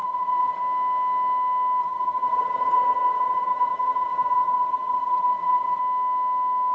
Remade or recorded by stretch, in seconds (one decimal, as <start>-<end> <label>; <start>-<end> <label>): 0.0-0.6 remade; 0.6-1.8 recorded; 1.8-5.8 remade; 5.8-6.7 recorded